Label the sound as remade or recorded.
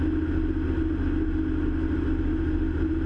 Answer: recorded